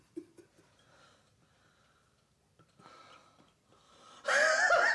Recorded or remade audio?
remade